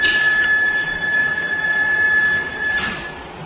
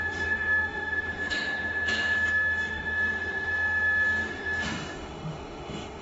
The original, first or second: first